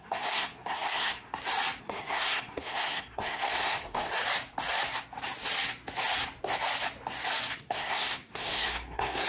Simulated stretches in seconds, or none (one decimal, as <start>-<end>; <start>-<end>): 0.0-1.3; 1.8-4.1; 7.6-9.3